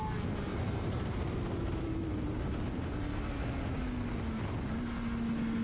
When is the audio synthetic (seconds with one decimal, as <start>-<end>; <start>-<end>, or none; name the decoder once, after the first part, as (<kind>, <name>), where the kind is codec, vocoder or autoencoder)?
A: 0.5-3.3 (vocoder, BigVGAN v2)